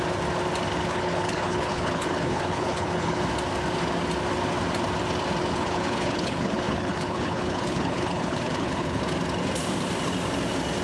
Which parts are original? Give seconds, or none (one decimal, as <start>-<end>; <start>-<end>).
0.0-0.9; 3.2-5.5; 9.0-10.8